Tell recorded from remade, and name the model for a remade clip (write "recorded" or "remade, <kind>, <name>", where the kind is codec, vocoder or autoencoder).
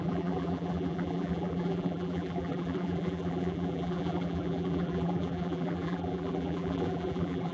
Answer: remade, vocoder, BigVGAN v2